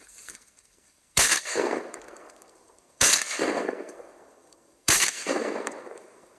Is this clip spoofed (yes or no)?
yes